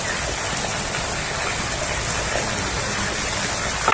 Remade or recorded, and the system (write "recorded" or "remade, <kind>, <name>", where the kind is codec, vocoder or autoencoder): recorded